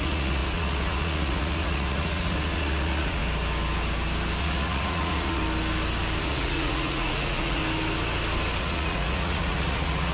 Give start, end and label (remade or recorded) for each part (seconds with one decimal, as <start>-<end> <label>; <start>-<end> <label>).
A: 0.0-3.2 remade; 3.2-4.4 recorded; 4.4-5.4 remade; 5.4-6.2 recorded; 6.2-7.6 remade; 7.6-8.6 recorded; 8.6-10.1 remade